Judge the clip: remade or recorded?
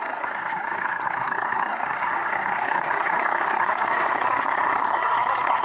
remade